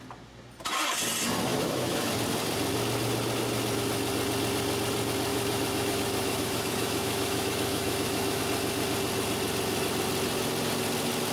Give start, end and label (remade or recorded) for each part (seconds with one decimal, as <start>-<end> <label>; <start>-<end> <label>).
0.0-1.5 recorded; 1.5-2.1 remade; 2.1-5.3 recorded; 5.3-8.4 remade; 8.4-11.3 recorded